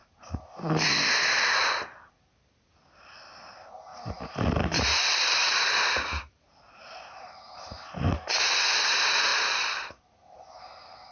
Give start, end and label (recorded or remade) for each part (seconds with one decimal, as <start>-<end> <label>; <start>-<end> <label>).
0.0-3.9 recorded; 3.9-8.1 remade; 8.1-9.3 recorded; 9.3-10.6 remade; 10.6-11.1 recorded